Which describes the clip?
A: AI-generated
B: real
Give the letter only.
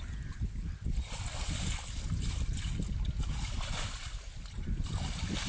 B